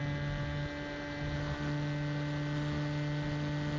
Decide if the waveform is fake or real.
real